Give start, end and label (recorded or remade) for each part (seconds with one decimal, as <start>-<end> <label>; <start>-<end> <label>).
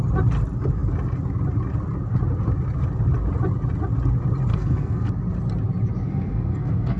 0.0-4.5 recorded; 4.5-5.1 remade; 5.1-6.0 recorded; 6.0-7.0 remade